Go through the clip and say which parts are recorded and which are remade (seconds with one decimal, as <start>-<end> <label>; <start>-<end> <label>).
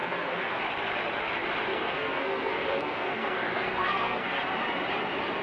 0.0-0.6 remade; 0.6-1.7 recorded; 1.7-4.4 remade; 4.4-5.4 recorded